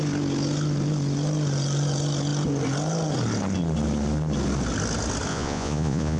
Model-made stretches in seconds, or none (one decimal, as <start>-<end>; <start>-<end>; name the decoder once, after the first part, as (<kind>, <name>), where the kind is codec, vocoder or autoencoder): 5.3-6.2 (vocoder, Vocos)